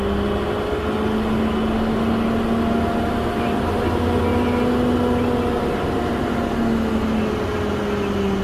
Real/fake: real